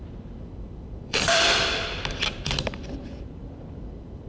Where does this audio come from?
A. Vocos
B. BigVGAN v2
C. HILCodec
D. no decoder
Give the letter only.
B